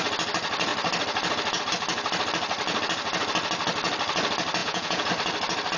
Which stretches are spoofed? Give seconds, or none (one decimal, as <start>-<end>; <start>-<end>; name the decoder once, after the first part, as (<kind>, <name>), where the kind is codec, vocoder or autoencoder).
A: 4.6-5.1 (vocoder, Vocos)